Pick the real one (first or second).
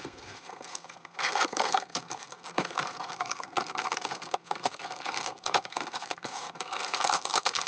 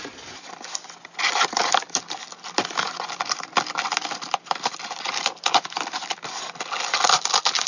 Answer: second